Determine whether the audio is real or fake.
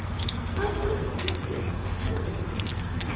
fake